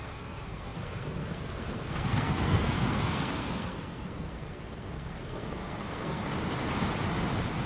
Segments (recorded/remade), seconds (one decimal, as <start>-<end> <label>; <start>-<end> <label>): 0.0-6.2 remade; 6.2-7.7 recorded